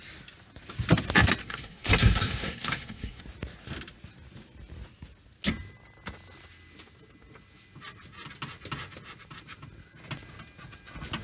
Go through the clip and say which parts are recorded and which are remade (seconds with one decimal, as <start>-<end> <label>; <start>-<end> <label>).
0.0-1.4 recorded; 1.4-3.2 remade; 3.2-11.2 recorded